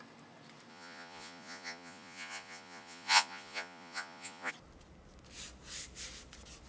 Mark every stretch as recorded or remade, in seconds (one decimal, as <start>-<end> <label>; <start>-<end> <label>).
0.0-0.7 recorded; 0.7-4.5 remade; 4.5-6.7 recorded